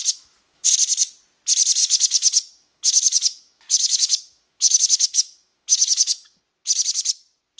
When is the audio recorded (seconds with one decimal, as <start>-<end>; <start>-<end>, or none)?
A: 0.7-1.8; 6.4-7.6